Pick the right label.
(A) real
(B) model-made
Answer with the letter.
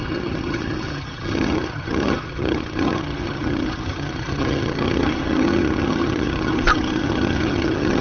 B